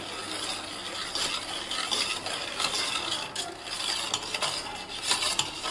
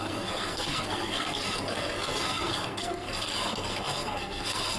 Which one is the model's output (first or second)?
second